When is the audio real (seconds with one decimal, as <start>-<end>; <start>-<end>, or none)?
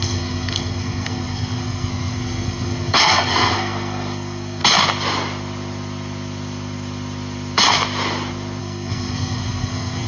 4.6-8.6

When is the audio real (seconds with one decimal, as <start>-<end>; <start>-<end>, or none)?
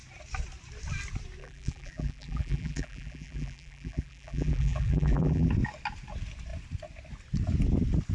0.0-1.4; 5.5-8.1